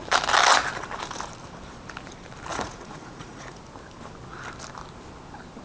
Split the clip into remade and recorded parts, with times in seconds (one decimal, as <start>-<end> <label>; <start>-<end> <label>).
0.0-2.5 recorded; 2.5-3.6 remade; 3.6-5.6 recorded